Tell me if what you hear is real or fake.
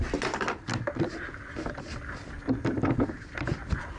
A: real